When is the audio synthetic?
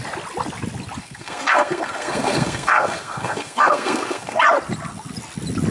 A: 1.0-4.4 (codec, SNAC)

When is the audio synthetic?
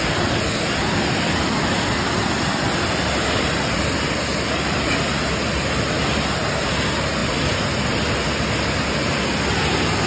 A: none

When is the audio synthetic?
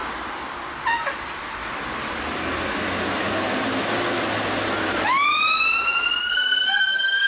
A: 6.3-7.3 (codec, SNAC)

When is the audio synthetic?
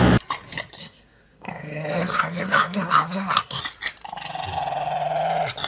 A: 0.8-3.6 (codec, SNAC)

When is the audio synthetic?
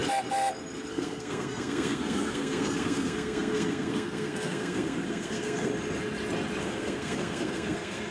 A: 0.9-5.7 (codec, SNAC); 6.6-8.1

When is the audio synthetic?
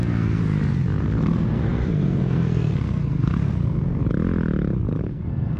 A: 0.0-0.4 (codec, SNAC); 1.0-4.0; 5.0-5.6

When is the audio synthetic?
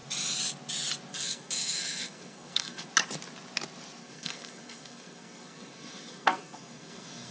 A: 1.1-2.9 (codec, SNAC); 4.0-7.3